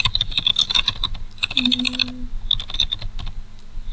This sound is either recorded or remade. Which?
recorded